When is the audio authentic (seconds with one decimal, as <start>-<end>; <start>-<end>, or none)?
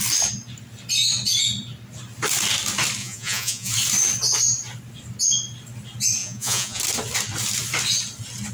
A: 0.0-3.0; 3.7-6.2; 6.8-8.5